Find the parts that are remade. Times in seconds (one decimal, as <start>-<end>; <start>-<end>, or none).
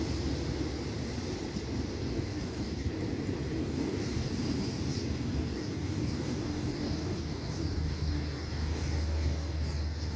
1.9-2.9; 3.6-4.3; 4.9-10.2